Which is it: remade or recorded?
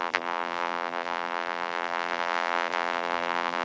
remade